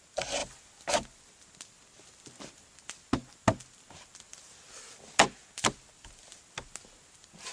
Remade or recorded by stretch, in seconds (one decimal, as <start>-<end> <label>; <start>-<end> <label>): 0.0-7.5 recorded

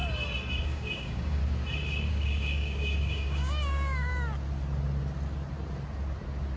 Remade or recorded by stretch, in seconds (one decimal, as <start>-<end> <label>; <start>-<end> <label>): 0.0-0.6 recorded; 0.6-1.4 remade; 1.4-2.1 recorded; 2.1-4.1 remade; 4.1-6.6 recorded

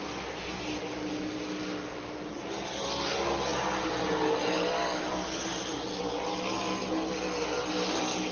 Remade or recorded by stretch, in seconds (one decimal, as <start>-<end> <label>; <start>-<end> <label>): 0.0-8.3 recorded